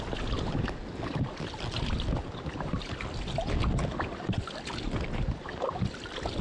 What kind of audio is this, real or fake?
real